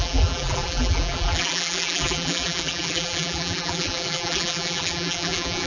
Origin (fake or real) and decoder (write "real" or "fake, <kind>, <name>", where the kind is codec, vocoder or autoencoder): fake, vocoder, BigVGAN v2